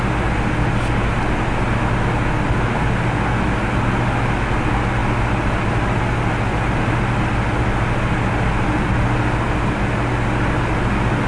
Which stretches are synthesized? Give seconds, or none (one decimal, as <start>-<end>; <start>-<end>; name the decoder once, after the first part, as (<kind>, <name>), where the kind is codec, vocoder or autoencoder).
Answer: none